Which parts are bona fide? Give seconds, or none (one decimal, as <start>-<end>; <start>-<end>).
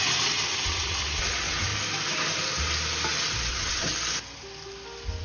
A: 1.7-3.5; 3.9-5.2